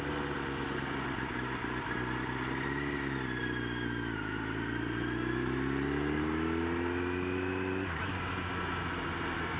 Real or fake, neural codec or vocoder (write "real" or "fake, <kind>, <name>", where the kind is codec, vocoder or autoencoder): real